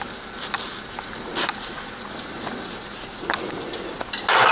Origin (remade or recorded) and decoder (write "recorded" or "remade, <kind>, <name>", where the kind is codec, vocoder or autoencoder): recorded